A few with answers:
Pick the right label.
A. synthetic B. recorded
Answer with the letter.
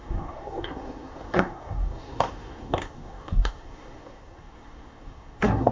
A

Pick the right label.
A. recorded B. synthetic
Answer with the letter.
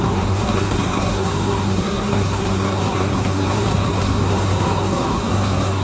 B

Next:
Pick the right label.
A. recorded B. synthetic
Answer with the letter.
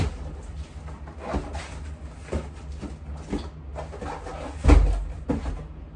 A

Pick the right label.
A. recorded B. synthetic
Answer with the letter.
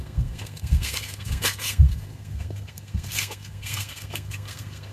B